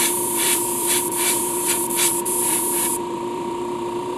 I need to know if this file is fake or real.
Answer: fake